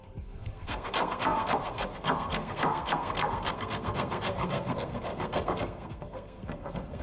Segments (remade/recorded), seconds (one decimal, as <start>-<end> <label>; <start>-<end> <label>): 0.0-7.0 remade

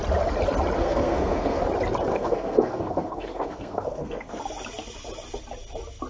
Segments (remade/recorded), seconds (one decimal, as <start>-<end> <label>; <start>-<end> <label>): 0.0-0.8 recorded; 0.8-1.6 remade; 1.6-2.1 recorded; 2.1-4.4 remade; 4.4-6.1 recorded

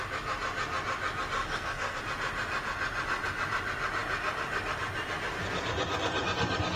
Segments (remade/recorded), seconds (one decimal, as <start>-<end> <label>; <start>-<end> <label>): 0.0-1.4 recorded; 1.4-2.0 remade; 2.0-6.8 recorded

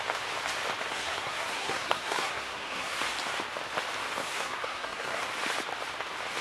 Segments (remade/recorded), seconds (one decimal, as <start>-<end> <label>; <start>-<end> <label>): 0.0-0.9 recorded; 0.9-3.0 remade; 3.0-4.2 recorded; 4.2-5.2 remade; 5.2-6.4 recorded

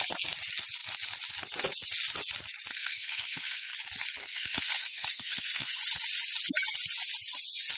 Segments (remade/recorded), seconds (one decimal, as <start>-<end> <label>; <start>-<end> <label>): 0.0-2.7 recorded; 2.7-3.7 remade; 3.7-4.2 recorded; 4.2-5.8 remade; 5.8-7.8 recorded